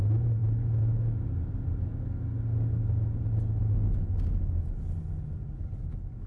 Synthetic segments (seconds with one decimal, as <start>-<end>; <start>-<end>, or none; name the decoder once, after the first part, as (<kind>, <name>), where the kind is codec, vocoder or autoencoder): none